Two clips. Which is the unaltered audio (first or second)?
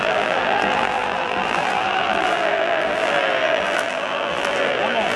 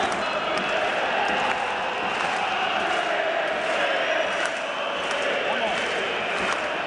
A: second